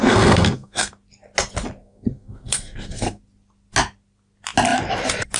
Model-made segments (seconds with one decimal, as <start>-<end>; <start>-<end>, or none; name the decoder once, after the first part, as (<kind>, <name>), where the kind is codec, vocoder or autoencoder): 0.0-0.9 (codec, SNAC); 1.8-3.2